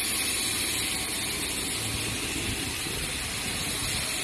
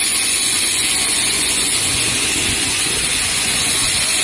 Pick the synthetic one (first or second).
second